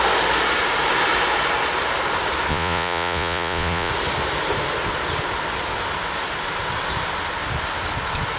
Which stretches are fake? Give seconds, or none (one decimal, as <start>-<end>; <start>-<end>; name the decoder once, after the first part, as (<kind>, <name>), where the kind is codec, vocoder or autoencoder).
2.5-3.9 (vocoder, Vocos)